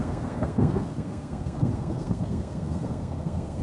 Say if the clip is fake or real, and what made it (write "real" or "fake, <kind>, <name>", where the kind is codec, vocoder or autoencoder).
fake, codec, SNAC